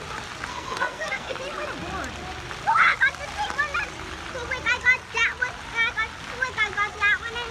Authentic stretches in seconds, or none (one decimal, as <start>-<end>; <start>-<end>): 0.0-0.5; 1.4-7.5